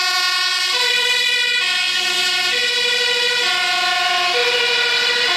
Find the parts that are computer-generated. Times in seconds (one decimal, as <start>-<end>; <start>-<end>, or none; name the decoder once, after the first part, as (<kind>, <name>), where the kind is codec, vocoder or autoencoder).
0.5-1.5 (vocoder, BigVGAN v2); 4.4-5.4